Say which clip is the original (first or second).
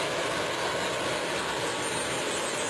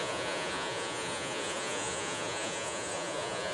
first